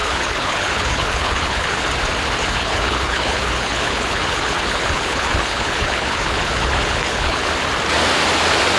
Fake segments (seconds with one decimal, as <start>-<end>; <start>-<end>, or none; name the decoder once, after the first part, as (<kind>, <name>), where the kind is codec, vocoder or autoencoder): 0.0-1.9 (codec, HILCodec); 2.4-7.5